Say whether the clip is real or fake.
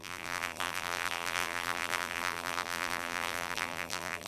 fake